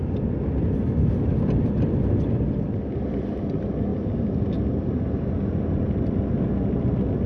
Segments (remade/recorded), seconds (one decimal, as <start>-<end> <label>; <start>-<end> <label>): 0.0-3.9 recorded; 3.9-5.2 remade; 5.2-7.3 recorded